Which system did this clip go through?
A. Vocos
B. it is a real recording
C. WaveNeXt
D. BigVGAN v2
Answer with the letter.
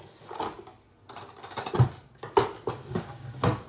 B